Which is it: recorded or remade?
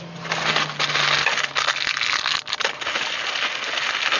recorded